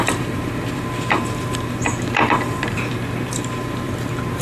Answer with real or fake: fake